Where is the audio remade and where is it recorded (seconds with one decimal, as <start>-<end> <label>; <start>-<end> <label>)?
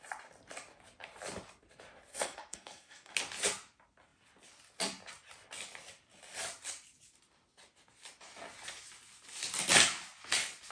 0.0-2.1 recorded; 2.1-3.1 remade; 3.1-10.7 recorded